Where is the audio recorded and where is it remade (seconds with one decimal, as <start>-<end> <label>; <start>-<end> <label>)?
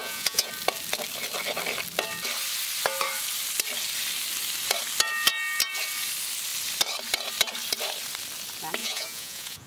0.0-0.5 remade; 0.5-8.8 recorded; 8.8-9.7 remade